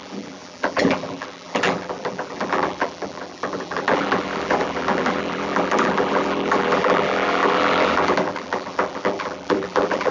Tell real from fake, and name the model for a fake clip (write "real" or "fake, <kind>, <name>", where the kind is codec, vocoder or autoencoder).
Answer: fake, vocoder, BigVGAN v2